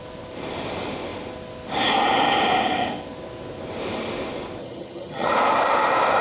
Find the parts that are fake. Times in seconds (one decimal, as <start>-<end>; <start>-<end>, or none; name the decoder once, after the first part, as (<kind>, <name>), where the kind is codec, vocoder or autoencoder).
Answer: 4.6-5.3 (vocoder, HiFi-GAN)